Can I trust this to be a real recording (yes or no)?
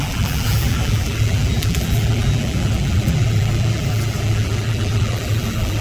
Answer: no